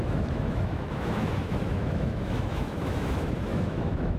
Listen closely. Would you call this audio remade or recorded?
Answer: remade